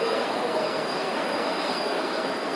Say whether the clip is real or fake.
fake